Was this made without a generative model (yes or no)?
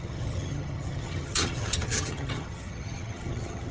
no